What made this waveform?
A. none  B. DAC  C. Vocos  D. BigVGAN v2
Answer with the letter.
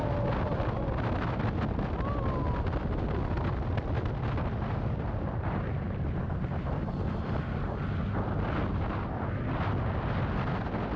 A